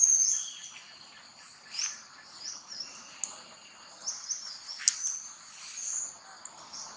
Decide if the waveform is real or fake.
real